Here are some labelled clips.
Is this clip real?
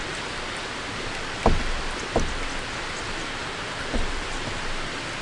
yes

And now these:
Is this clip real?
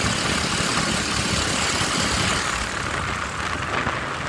yes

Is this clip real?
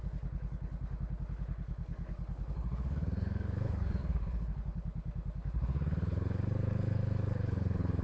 no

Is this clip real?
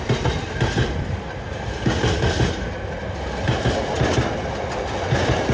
yes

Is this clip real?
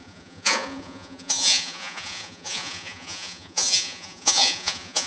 no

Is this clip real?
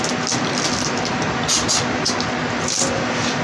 yes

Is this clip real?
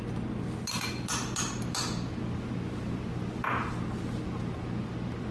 yes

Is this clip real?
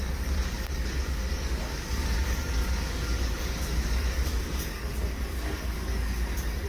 no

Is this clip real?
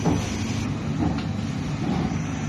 yes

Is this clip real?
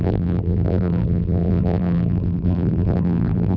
no